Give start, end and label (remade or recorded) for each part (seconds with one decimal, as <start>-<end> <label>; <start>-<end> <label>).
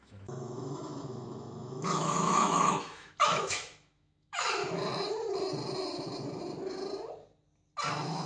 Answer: 0.0-4.6 remade; 4.6-7.9 recorded; 7.9-8.3 remade